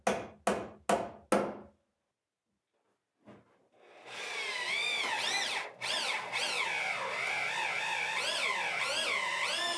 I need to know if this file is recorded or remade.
recorded